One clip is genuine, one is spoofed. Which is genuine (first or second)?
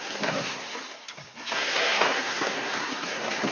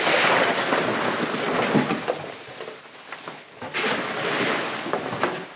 second